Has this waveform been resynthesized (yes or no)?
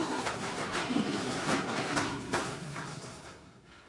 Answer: yes